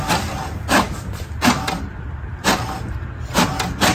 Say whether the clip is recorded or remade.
recorded